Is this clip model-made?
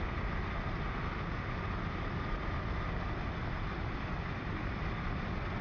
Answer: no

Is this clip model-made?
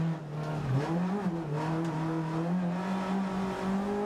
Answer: no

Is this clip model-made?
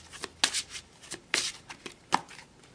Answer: no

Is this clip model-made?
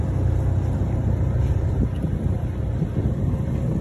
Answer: yes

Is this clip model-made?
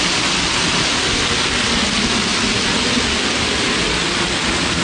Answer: no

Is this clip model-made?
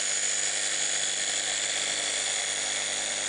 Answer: no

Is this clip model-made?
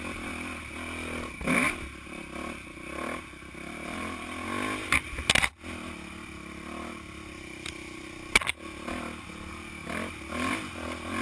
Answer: no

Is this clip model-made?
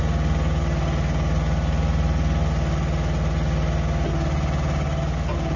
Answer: no